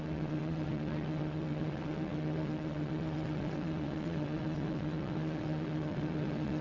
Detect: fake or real fake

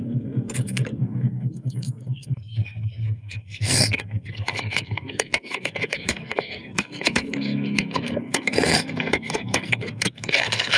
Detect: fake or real fake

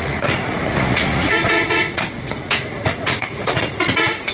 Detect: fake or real fake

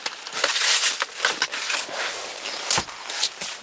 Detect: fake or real real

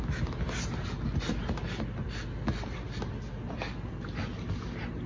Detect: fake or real real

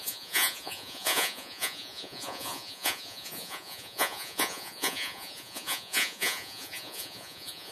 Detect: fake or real fake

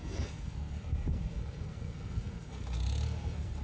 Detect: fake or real fake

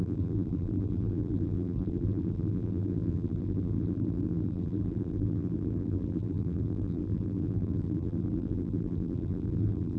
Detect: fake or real fake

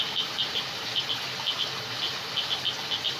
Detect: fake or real real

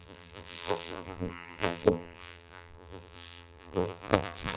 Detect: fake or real fake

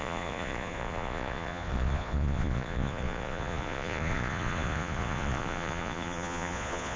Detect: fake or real fake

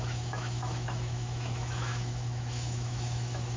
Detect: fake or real fake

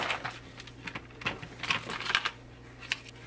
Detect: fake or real real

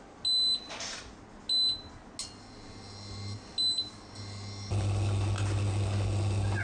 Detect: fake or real real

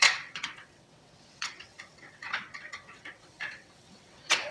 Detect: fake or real fake